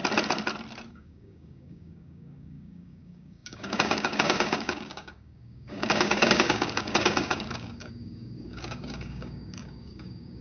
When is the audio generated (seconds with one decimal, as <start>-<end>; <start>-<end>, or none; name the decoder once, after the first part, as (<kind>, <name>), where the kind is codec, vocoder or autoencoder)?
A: 0.9-10.4 (codec, DAC)